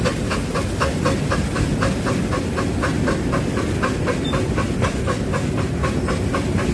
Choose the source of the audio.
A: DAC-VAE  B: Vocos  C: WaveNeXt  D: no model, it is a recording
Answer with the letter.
D